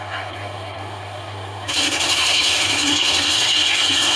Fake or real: fake